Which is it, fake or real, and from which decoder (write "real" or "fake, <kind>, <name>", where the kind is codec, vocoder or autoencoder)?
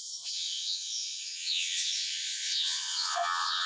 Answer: fake, vocoder, Vocos